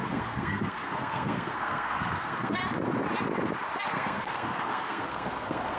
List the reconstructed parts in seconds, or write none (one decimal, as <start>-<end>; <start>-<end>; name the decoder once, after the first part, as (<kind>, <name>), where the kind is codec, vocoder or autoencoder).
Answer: 0.0-2.6 (codec, SNAC); 3.8-5.8